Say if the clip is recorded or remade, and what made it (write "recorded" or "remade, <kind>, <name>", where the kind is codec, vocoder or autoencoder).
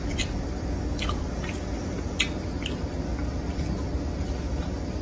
recorded